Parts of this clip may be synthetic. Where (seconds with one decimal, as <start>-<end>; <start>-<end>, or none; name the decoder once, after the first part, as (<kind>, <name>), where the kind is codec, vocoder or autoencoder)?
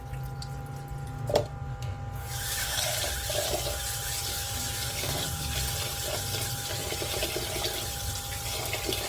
2.2-3.0 (codec, DAC); 4.3-5.1